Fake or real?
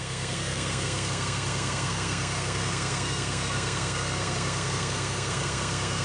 fake